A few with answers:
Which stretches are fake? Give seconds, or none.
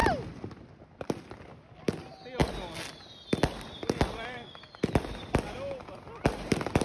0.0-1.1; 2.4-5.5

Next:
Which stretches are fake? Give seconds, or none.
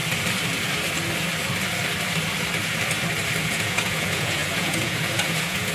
3.4-5.7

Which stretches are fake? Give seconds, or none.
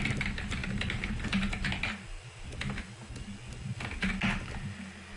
none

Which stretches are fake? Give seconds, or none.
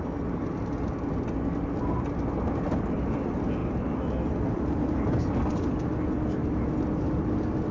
3.6-6.0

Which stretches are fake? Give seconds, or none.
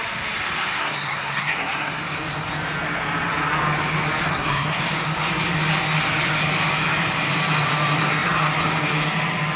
0.8-2.0; 4.3-4.8